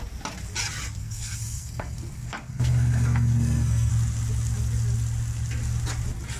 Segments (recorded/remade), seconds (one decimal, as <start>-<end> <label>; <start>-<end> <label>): 0.0-1.0 recorded; 1.0-3.9 remade; 3.9-6.4 recorded